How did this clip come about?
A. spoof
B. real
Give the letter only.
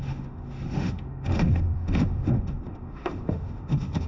A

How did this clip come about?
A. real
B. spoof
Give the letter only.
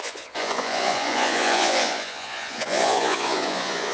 B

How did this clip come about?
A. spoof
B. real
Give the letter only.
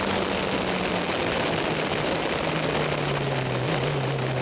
B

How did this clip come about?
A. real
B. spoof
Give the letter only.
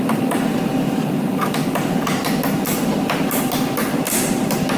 A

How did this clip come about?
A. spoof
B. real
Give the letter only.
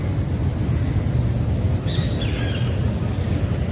B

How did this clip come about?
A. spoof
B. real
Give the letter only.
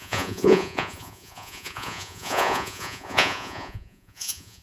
A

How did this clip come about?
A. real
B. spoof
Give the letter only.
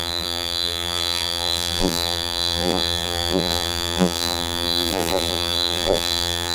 B